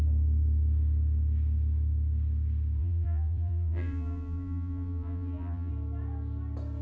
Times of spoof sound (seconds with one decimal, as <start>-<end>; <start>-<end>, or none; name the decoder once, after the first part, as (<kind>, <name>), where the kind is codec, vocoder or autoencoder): 2.8-5.7 (vocoder, BigVGAN v2)

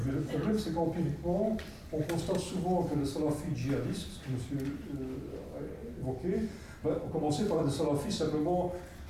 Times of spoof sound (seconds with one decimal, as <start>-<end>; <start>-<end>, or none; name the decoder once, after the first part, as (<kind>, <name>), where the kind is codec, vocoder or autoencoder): none

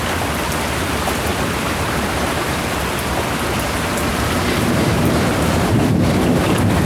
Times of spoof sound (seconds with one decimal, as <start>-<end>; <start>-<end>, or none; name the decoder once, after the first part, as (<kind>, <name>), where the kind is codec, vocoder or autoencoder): 1.3-2.8 (vocoder, BigVGAN v2); 4.1-5.3

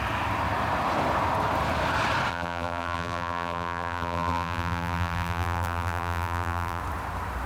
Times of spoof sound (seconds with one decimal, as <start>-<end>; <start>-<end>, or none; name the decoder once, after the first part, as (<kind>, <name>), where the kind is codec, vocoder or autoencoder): 2.3-6.8 (vocoder, BigVGAN v2)